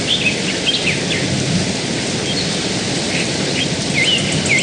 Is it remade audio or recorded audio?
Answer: recorded